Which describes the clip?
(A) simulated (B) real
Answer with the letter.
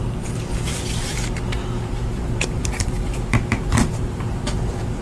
A